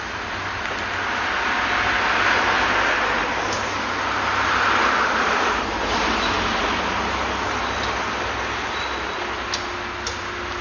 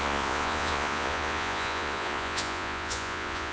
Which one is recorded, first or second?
first